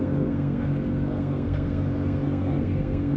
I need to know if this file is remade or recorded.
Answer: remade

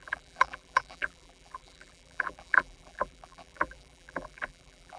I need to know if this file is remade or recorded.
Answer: remade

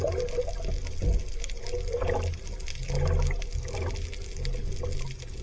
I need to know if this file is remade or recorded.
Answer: recorded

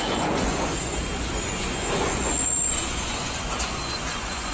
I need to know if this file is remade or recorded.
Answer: remade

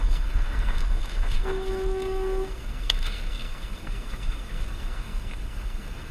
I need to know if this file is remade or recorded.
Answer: remade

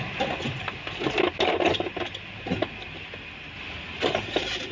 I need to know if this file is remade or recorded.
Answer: recorded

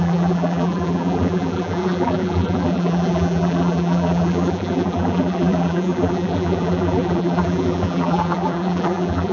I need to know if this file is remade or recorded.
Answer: remade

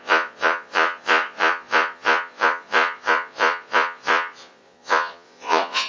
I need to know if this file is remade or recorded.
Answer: remade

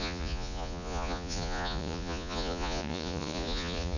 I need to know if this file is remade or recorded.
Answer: remade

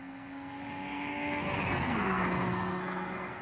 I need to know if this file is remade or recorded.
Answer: remade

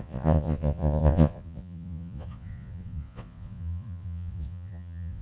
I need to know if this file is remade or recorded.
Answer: remade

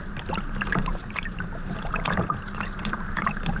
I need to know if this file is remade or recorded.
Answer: remade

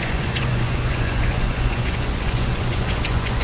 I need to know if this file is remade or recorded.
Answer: remade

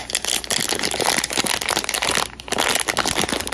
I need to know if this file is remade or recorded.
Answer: recorded